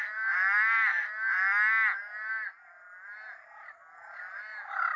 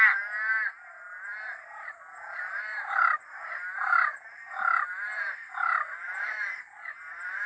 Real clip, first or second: first